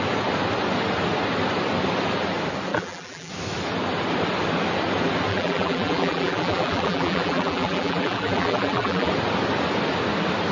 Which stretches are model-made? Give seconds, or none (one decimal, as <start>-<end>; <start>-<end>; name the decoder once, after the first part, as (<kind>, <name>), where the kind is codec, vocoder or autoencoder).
2.7-3.3 (vocoder, BigVGAN v2); 5.3-9.1